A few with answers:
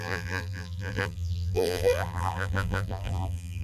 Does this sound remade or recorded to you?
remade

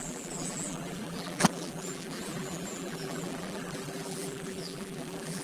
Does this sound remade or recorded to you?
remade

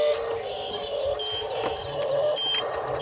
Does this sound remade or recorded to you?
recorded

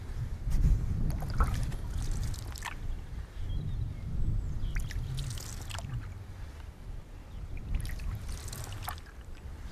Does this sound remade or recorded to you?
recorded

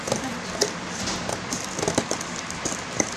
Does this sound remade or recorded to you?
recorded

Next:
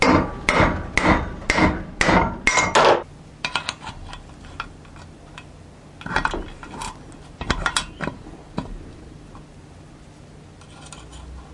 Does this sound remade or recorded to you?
recorded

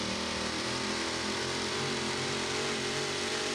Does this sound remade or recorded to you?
remade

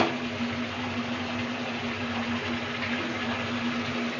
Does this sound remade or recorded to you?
recorded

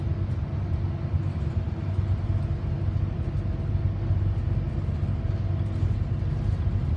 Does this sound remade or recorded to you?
recorded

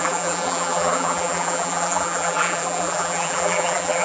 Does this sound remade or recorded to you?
remade